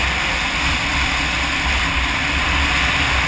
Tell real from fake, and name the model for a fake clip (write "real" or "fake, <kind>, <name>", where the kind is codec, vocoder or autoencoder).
real